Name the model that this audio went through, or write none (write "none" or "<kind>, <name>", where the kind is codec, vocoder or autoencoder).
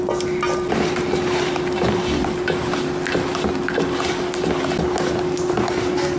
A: none